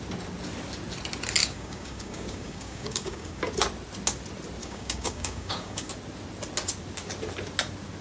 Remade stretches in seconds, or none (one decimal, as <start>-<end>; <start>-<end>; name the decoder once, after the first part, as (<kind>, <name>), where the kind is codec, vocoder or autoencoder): 1.4-3.4 (codec, DAC); 4.6-5.9